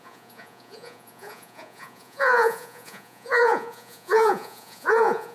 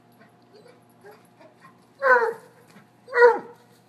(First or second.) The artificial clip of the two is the first